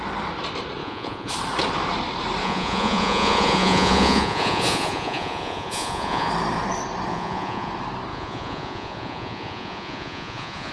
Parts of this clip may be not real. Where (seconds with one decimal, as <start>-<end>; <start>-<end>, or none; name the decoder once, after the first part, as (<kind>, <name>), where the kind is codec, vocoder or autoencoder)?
0.8-1.3 (vocoder, Vocos); 2.4-6.3; 7.1-7.7; 8.1-10.7